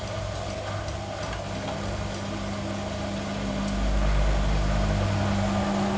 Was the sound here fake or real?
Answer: real